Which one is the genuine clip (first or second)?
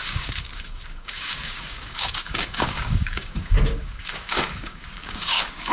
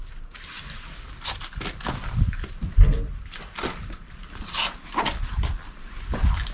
second